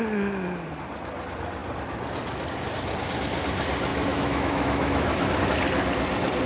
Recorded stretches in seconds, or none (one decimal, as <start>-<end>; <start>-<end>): 0.0-3.9; 5.4-6.5